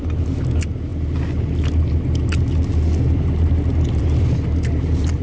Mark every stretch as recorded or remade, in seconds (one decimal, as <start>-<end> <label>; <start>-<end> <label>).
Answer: 0.0-5.2 recorded